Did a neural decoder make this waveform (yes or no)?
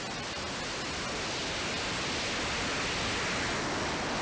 no